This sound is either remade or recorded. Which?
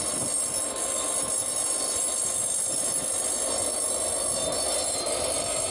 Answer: recorded